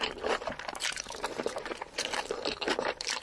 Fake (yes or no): yes